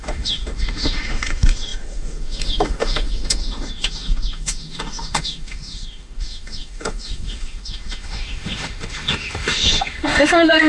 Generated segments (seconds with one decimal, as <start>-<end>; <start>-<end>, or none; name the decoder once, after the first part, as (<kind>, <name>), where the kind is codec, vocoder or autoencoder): 0.0-10.7 (autoencoder, DAC-VAE)